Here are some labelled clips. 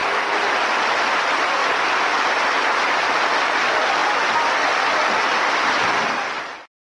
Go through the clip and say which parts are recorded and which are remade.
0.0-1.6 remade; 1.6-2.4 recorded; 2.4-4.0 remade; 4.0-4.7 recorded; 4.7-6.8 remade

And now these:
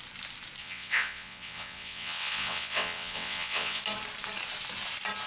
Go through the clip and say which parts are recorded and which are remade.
0.0-0.6 recorded; 0.6-3.8 remade; 3.8-5.3 recorded

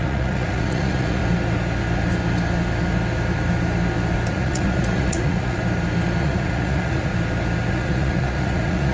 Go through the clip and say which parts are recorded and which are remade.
0.0-1.2 remade; 1.2-4.3 recorded; 4.3-5.6 remade; 5.6-6.2 recorded; 6.2-7.1 remade; 7.1-7.7 recorded; 7.7-8.9 remade

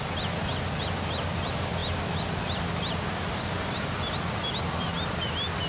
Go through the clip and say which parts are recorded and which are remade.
0.0-5.7 recorded

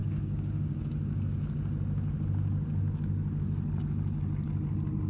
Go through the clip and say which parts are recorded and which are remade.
0.0-0.8 remade; 0.8-5.1 recorded

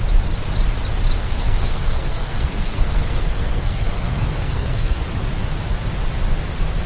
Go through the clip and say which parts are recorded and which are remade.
0.0-1.2 recorded; 1.2-5.0 remade; 5.0-6.9 recorded

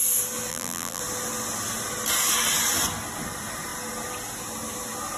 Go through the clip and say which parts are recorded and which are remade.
0.0-0.5 recorded; 0.5-1.0 remade; 1.0-5.2 recorded